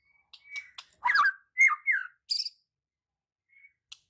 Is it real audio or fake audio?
real